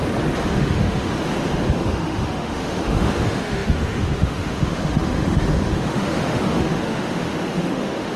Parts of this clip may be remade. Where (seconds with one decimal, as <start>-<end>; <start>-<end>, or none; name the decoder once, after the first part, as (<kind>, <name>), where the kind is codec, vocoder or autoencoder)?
0.5-1.1 (autoencoder, DAC-VAE); 1.8-8.2